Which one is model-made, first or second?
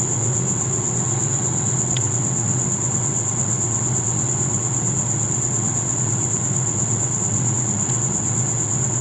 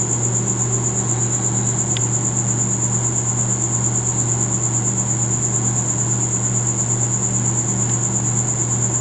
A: first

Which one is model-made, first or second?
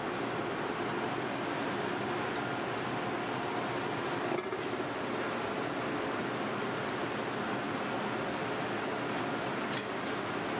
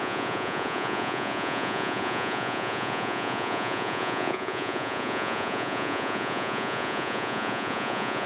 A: second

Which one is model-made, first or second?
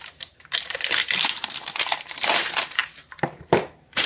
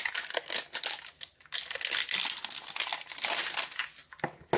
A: first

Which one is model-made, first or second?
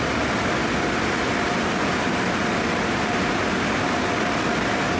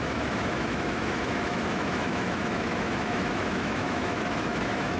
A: second